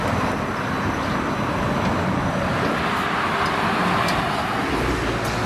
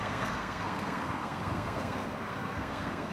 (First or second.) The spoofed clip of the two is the second